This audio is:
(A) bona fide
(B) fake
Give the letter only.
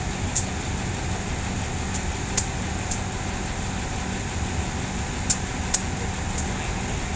A